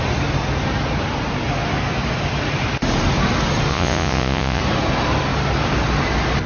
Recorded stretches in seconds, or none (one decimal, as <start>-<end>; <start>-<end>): 0.0-3.7; 4.6-6.5

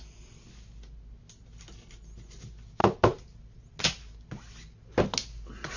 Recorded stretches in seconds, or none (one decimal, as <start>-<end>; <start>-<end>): 0.0-5.8

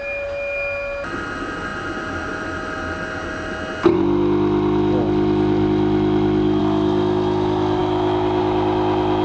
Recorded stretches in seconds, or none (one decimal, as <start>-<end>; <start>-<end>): 0.0-9.2

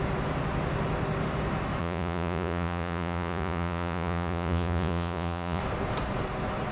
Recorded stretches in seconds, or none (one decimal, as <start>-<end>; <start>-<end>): 0.0-1.8; 5.6-6.7

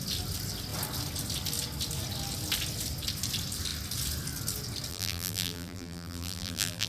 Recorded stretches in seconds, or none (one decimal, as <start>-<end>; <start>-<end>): 0.0-4.9